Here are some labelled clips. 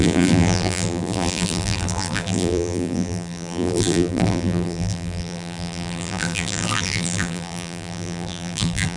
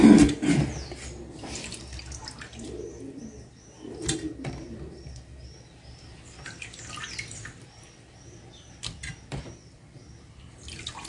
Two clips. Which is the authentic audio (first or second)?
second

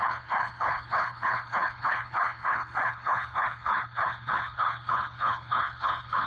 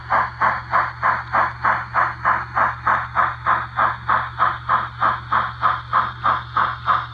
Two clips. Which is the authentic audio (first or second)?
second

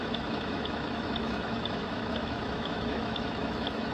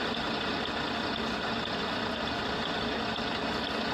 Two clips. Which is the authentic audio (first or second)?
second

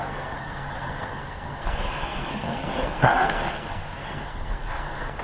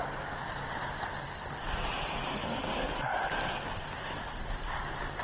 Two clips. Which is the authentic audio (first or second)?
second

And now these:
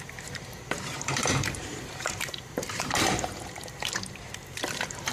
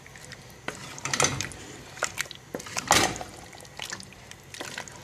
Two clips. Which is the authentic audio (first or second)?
second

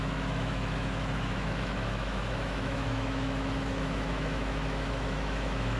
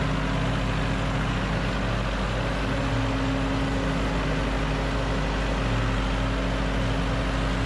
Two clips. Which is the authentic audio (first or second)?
second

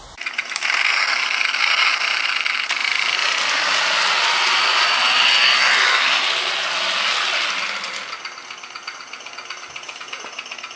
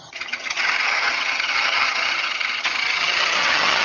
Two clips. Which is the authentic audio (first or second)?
first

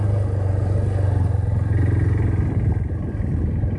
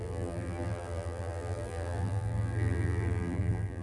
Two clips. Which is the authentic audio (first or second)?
first